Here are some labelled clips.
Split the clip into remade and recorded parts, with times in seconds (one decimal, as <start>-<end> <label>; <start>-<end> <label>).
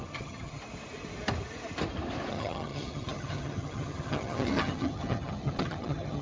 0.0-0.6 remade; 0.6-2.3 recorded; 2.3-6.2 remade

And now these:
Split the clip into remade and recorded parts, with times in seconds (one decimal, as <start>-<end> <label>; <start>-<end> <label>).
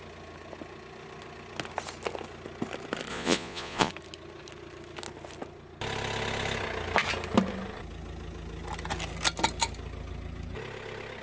0.0-3.1 recorded; 3.1-3.9 remade; 3.9-11.2 recorded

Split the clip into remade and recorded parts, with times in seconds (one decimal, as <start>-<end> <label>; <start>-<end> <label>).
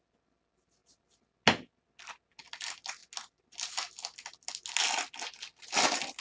0.0-6.2 recorded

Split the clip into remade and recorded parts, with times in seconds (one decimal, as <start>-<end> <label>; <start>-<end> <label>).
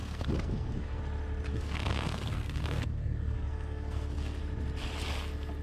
0.0-1.0 remade; 1.0-1.5 recorded; 1.5-4.4 remade; 4.4-5.6 recorded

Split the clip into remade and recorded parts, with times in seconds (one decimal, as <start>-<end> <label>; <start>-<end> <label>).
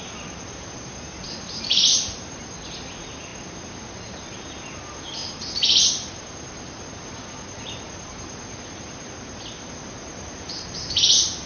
0.0-11.5 recorded